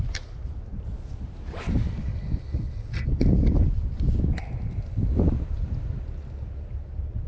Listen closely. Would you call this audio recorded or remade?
recorded